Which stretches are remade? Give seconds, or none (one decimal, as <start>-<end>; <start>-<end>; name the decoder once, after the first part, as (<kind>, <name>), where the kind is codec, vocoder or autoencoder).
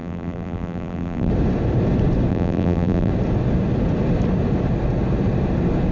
0.0-1.3 (vocoder, BigVGAN v2); 2.3-3.1